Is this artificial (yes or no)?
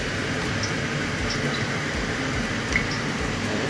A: no